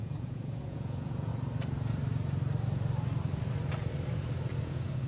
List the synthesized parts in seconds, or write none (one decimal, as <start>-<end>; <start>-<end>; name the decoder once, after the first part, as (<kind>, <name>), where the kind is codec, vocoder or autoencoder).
0.0-1.3 (vocoder, Vocos); 4.4-5.1